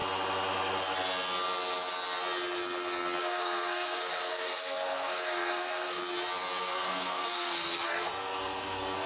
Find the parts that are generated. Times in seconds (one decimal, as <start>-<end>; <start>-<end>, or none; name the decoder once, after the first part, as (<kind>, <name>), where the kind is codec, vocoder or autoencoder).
3.2-6.0 (codec, SNAC); 6.6-9.1